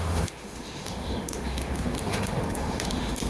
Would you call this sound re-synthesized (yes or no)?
yes